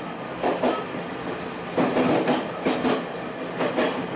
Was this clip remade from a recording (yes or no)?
no